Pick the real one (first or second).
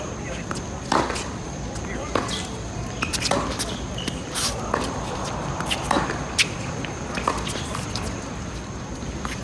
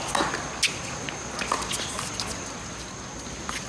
second